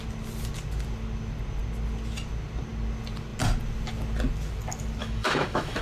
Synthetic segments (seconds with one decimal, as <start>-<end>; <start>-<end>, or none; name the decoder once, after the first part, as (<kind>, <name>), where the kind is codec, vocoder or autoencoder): 5.0-5.8 (autoencoder, DAC-VAE)